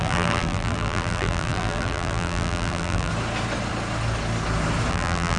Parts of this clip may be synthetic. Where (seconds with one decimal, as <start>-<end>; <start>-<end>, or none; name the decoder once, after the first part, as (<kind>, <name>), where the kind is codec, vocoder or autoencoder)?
0.0-3.1 (vocoder, BigVGAN v2); 4.9-5.4